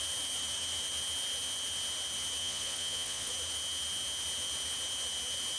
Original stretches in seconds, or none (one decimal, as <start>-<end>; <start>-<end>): 0.0-2.4; 3.3-5.6